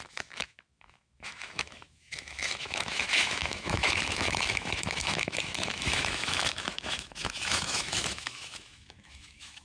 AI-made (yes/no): yes